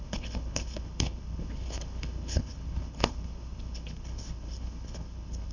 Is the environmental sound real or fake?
fake